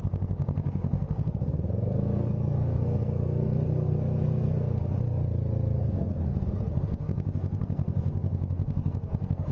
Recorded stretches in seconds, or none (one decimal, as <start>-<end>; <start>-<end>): 4.8-5.8